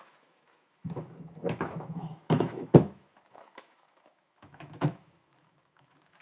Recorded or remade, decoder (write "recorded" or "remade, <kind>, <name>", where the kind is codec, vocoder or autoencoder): remade, autoencoder, DAC-VAE